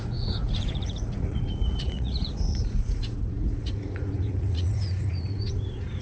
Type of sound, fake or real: fake